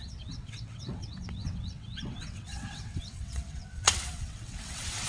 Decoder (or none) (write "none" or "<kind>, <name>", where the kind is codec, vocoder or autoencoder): vocoder, WaveNeXt